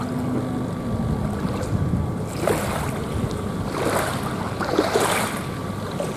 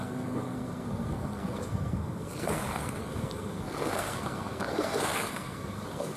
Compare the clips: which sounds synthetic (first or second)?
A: second